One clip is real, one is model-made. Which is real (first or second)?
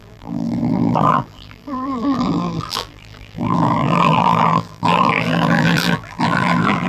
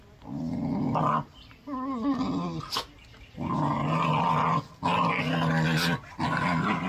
second